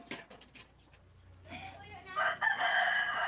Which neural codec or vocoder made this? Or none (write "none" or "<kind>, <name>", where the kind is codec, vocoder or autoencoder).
none